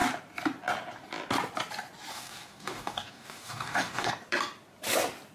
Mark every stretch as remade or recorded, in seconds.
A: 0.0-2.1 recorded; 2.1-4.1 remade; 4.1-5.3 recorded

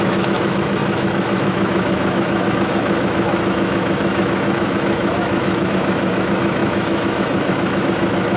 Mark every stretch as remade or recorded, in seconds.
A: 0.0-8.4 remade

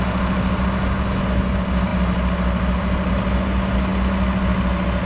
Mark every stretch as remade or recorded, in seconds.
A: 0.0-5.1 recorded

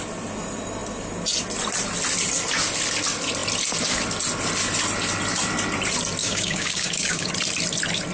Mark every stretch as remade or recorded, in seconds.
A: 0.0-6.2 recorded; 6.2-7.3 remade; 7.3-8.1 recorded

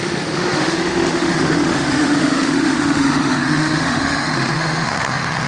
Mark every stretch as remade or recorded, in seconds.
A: 0.0-5.5 remade

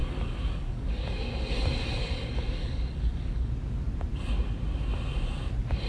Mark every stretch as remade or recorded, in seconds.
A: 0.0-3.5 remade; 3.5-5.9 recorded